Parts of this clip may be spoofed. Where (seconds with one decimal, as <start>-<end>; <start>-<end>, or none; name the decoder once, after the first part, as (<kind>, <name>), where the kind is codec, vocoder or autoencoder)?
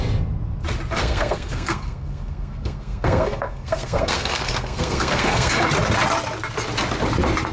1.0-5.5 (codec, SNAC)